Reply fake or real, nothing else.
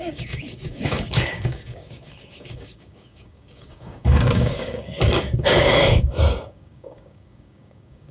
fake